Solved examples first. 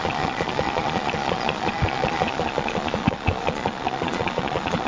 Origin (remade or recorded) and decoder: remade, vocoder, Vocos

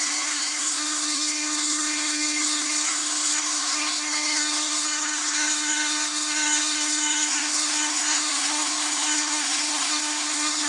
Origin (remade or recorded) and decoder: remade, codec, SNAC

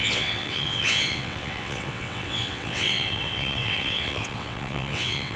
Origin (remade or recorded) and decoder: remade, vocoder, WaveNeXt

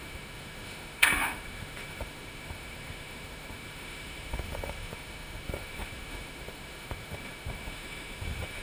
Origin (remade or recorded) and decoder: remade, autoencoder, DAC-VAE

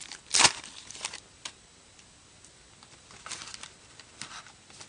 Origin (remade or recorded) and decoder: recorded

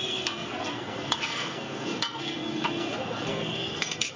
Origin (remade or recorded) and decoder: remade, codec, SNAC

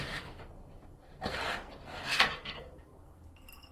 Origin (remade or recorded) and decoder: remade, codec, SNAC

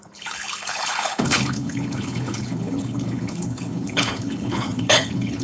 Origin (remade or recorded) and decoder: remade, codec, HILCodec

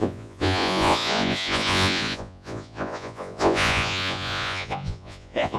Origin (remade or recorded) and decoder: remade, vocoder, Vocos